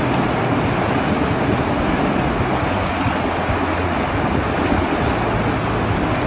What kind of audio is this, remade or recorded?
recorded